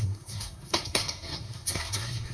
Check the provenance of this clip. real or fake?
fake